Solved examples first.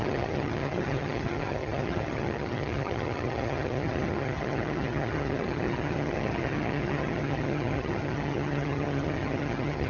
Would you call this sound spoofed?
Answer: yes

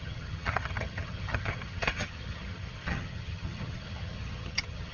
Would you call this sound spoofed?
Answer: yes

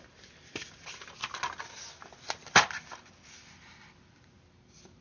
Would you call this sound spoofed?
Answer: no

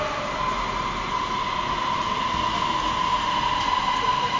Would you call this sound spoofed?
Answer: no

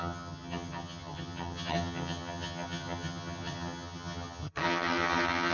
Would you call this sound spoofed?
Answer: yes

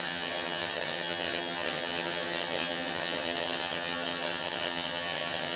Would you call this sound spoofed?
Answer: yes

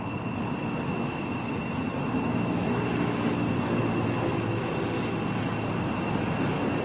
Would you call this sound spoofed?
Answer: no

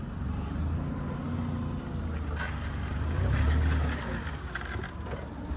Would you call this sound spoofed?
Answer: no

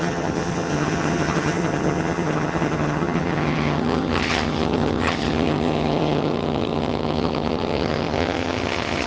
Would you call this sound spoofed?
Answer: yes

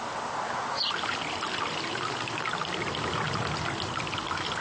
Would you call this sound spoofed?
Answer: no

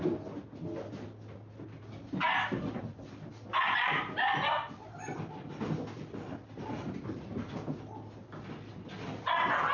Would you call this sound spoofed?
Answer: no